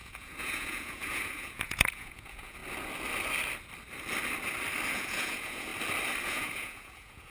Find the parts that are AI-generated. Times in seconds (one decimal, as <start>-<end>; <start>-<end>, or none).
0.0-2.6; 4.9-5.7; 6.2-7.3

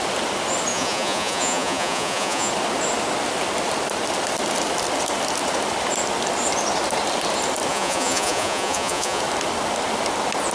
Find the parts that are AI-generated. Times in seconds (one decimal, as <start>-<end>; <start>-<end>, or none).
0.7-2.5; 7.7-9.2